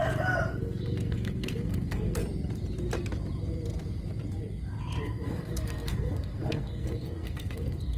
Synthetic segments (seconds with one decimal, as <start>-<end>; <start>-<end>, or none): 0.5-2.2; 5.0-8.0